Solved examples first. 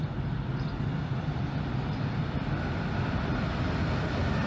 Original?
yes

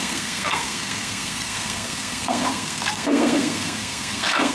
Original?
no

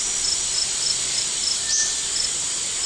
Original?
yes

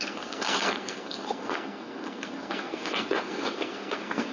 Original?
no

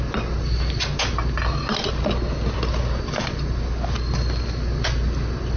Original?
yes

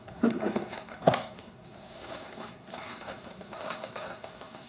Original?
no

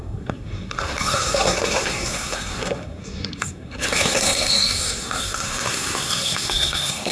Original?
no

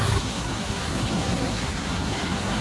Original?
no